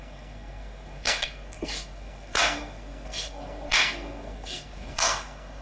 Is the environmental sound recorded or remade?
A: remade